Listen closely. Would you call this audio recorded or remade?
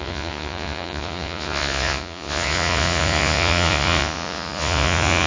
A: remade